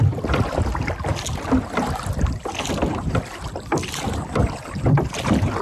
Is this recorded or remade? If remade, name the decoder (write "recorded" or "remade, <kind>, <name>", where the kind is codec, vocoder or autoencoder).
recorded